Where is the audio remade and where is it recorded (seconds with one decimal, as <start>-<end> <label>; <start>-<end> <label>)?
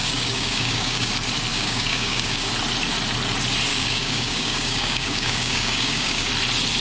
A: 0.0-1.1 remade; 1.1-1.5 recorded; 1.5-2.5 remade; 2.5-3.7 recorded; 3.7-6.3 remade; 6.3-6.8 recorded